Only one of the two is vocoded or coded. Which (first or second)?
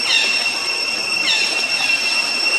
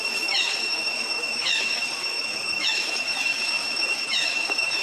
second